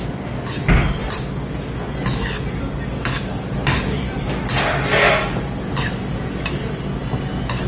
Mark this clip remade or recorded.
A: recorded